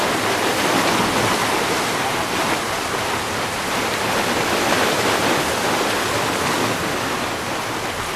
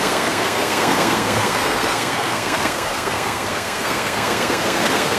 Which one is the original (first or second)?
first